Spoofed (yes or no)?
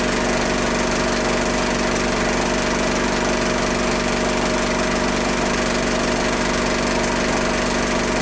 no